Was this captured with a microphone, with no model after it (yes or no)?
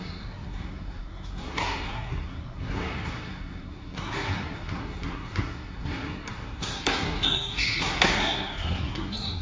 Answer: no